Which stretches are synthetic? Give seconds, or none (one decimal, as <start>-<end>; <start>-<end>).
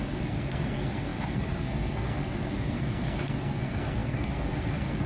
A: 0.0-5.1